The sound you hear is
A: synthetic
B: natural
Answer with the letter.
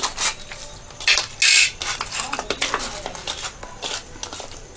B